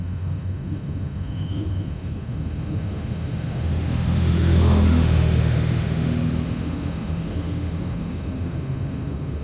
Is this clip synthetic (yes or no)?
yes